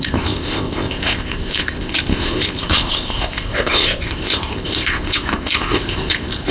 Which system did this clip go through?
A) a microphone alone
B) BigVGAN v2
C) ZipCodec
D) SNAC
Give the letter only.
C